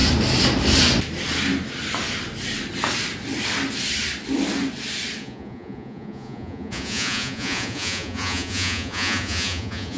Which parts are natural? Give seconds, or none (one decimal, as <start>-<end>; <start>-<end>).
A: 0.0-5.2